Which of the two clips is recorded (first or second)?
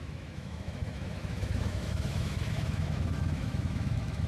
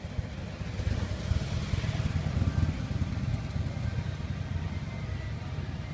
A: second